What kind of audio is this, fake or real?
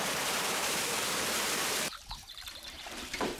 fake